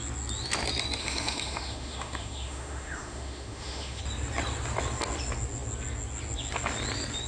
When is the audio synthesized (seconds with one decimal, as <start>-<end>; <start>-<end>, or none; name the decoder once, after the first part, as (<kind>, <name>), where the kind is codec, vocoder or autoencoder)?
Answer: 1.0-4.0 (autoencoder, DAC-VAE)